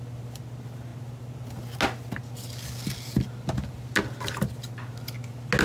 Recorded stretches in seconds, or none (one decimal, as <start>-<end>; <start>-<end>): 0.0-5.6